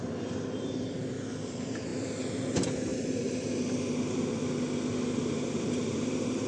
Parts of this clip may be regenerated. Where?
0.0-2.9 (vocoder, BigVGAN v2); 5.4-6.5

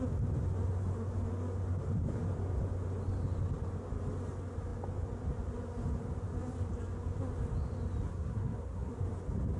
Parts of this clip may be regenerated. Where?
8.1-8.9 (codec, SNAC)

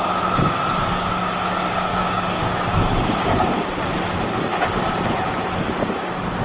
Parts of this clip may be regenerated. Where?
1.9-3.7 (codec, DAC)